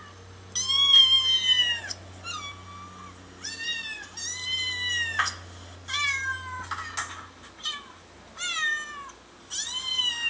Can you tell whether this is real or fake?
real